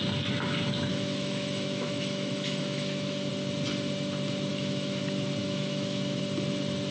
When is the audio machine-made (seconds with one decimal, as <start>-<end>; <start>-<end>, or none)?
0.9-3.3; 4.5-5.0; 5.4-6.2